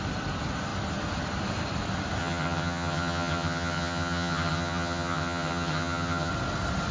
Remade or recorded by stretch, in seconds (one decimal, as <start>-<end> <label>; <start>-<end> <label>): 0.0-2.2 recorded; 2.2-6.3 remade; 6.3-6.9 recorded